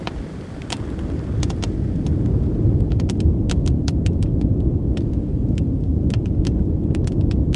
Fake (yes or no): yes